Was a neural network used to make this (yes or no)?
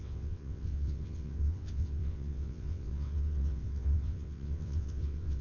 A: yes